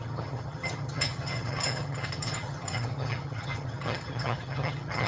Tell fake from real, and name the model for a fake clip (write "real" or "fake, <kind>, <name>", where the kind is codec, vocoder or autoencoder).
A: fake, vocoder, HiFi-GAN